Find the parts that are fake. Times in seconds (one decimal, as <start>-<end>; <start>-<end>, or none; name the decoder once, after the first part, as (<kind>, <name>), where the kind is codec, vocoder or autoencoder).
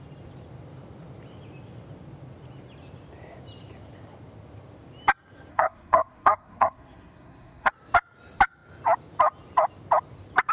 5.5-7.7 (codec, SNAC)